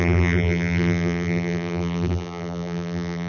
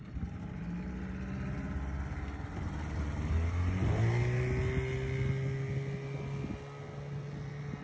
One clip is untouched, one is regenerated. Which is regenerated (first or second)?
first